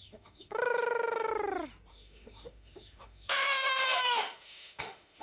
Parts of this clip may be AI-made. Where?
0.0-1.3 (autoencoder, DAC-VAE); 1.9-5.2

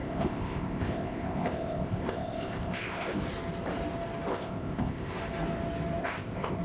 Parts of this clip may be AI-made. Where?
0.0-3.2 (codec, ZipCodec); 4.3-5.1; 6.0-6.6

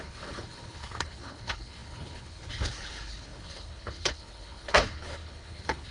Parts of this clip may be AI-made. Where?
0.0-5.9 (codec, HILCodec)

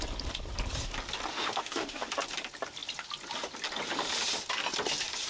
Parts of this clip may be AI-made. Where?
1.3-2.1 (autoencoder, DAC-VAE)

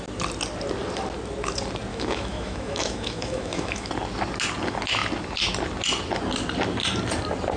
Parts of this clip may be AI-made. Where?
1.9-3.9 (autoencoder, DAC-VAE)

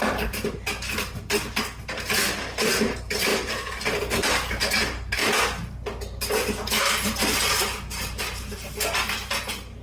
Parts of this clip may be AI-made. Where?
none